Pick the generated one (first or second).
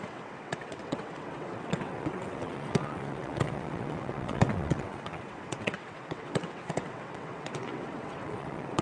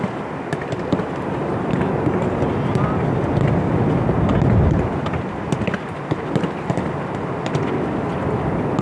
first